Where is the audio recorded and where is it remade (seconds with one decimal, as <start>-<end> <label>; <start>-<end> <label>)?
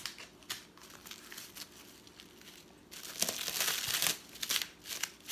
0.0-5.3 recorded